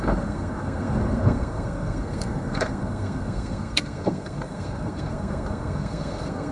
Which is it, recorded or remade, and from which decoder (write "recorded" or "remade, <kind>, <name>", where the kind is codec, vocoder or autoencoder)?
remade, codec, SNAC